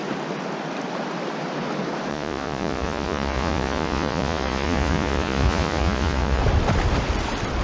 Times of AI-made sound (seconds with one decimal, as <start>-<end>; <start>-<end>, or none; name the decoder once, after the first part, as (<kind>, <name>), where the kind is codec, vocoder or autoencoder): 2.1-6.4 (vocoder, Vocos)